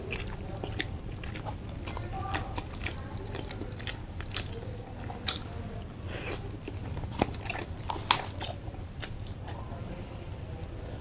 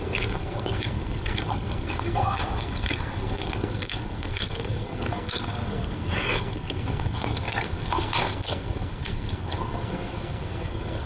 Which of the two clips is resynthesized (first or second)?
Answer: second